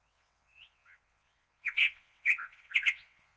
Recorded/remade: remade